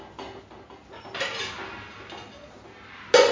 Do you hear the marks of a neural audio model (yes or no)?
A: no